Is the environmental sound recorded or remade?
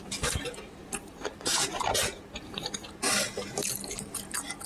remade